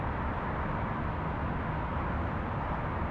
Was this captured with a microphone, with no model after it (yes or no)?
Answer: yes